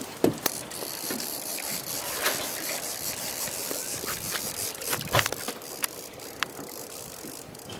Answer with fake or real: fake